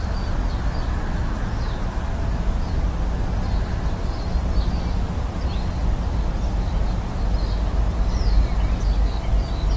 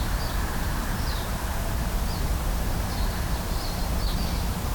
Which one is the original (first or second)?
first